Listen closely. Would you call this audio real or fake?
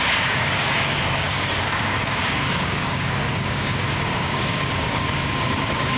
fake